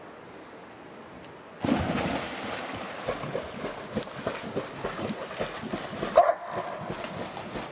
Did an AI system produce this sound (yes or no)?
no